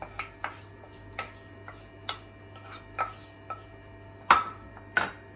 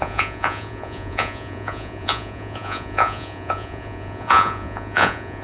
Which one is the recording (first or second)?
first